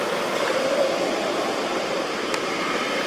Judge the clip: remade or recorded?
recorded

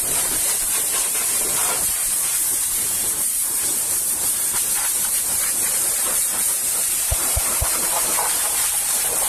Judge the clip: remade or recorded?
remade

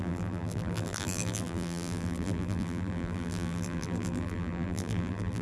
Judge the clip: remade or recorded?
remade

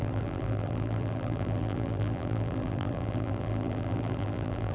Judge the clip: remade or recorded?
remade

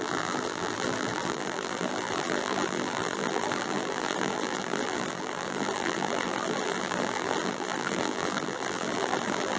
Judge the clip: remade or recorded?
remade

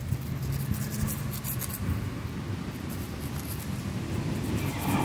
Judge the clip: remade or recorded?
recorded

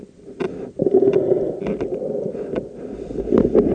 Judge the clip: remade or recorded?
remade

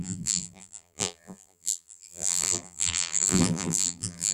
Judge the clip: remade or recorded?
remade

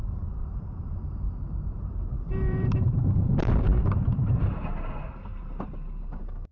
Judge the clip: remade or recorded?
remade